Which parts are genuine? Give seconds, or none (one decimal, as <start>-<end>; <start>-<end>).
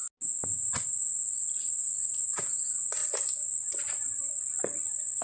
0.0-3.0